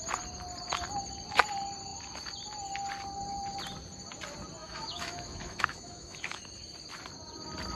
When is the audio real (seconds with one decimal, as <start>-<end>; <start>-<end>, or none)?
0.0-4.6; 6.4-7.7